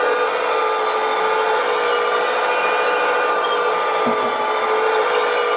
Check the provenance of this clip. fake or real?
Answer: real